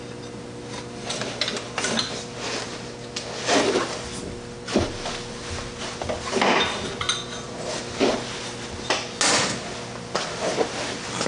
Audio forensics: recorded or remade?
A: recorded